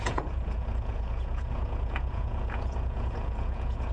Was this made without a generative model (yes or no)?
no